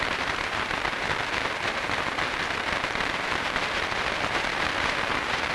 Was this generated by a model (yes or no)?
yes